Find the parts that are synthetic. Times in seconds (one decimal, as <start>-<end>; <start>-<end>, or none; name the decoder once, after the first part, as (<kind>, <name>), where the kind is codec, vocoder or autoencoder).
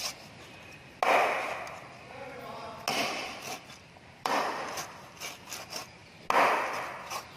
2.9-4.6 (vocoder, BigVGAN v2)